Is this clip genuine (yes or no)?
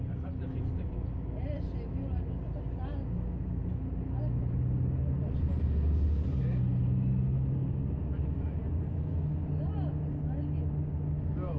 yes